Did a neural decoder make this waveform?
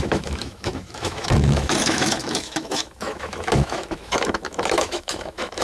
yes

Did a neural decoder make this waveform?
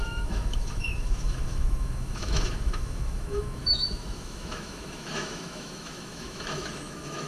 yes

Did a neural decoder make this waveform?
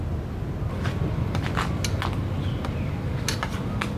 no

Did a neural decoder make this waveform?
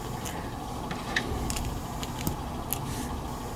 no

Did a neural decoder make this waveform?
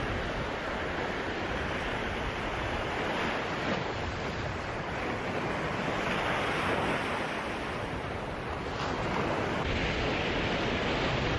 no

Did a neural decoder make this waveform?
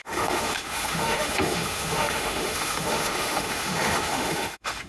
yes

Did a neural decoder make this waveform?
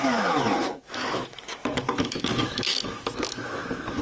yes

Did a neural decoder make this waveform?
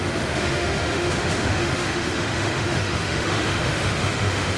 yes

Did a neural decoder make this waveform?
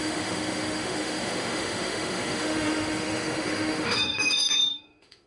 yes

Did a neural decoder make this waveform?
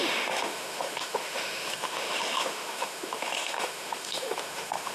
yes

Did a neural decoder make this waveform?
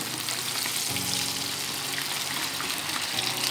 no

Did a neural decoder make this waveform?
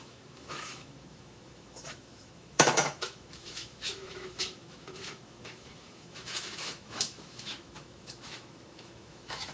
yes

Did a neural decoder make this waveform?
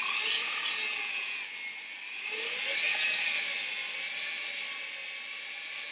no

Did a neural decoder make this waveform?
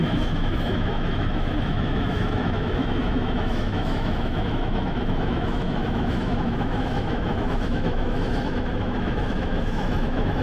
yes